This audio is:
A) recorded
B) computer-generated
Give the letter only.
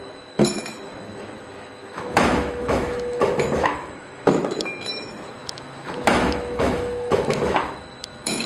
B